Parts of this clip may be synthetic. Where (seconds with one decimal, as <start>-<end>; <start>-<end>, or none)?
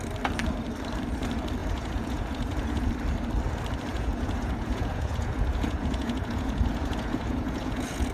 1.6-2.9; 3.9-8.1